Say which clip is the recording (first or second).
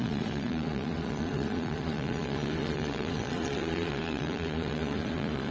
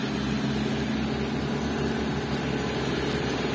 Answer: second